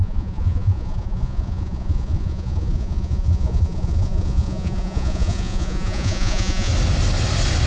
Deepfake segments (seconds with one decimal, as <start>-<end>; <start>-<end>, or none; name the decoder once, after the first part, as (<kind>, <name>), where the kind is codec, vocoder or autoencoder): 0.0-6.7 (vocoder, Vocos)